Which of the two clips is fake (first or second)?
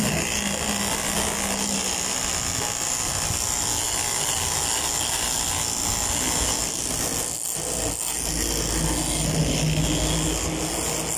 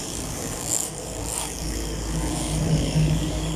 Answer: second